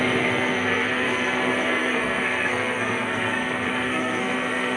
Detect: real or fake fake